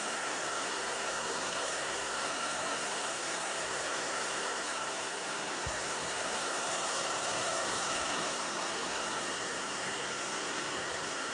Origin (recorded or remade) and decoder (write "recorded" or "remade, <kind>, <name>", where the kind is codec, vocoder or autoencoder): remade, codec, SNAC